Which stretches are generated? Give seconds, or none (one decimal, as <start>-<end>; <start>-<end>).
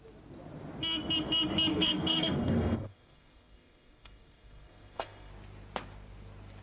1.7-5.3